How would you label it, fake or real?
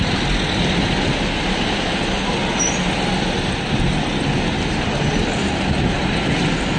real